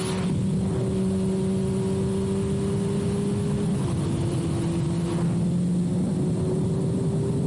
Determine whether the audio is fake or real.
real